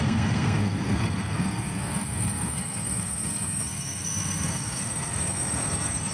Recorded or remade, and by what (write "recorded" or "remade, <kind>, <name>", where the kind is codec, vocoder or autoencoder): remade, codec, SNAC